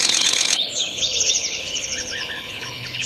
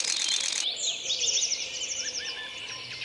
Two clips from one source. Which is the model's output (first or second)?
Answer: first